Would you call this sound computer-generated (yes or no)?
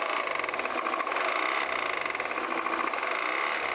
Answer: no